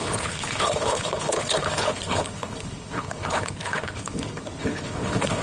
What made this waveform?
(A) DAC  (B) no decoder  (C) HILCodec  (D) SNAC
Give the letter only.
C